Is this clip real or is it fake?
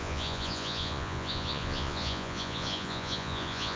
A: fake